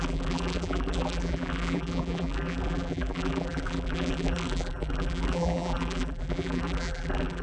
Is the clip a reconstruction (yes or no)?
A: yes